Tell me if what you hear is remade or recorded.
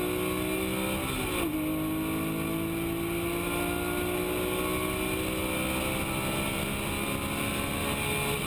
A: recorded